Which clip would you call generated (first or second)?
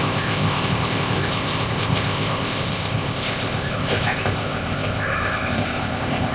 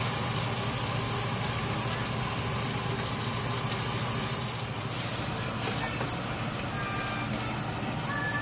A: first